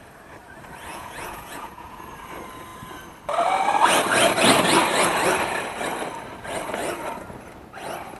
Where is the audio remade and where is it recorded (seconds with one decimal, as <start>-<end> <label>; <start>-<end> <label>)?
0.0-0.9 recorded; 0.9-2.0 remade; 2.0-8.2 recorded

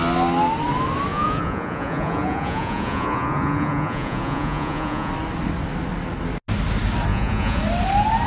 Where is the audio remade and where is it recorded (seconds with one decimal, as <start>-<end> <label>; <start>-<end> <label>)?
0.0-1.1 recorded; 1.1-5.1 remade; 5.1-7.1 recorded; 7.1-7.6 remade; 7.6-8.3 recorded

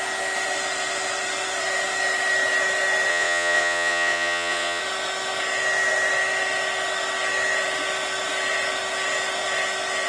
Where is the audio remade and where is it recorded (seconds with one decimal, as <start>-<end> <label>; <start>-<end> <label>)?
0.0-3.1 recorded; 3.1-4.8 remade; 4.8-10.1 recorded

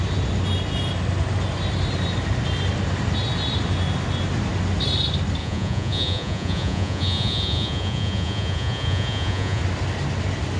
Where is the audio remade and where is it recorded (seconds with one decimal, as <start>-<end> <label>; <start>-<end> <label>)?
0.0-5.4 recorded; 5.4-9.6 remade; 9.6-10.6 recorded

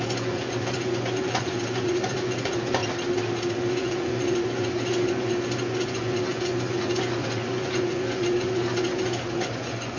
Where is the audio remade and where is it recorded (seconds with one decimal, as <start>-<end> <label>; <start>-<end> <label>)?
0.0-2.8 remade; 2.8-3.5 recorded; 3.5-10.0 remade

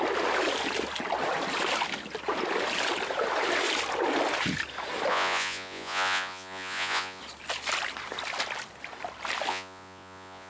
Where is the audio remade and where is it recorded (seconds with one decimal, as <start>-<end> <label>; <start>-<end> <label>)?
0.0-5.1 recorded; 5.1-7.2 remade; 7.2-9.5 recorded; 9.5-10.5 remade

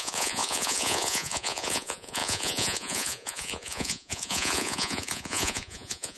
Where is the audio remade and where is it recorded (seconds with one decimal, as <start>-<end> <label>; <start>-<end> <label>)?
0.0-6.2 remade

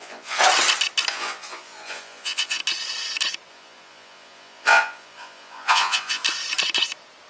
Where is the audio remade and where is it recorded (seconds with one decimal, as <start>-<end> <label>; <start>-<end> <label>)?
0.0-0.4 remade; 0.4-1.1 recorded; 1.1-2.6 remade; 2.6-3.5 recorded; 3.5-6.2 remade; 6.2-7.3 recorded